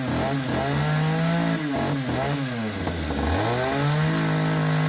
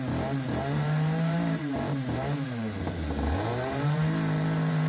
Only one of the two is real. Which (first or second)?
first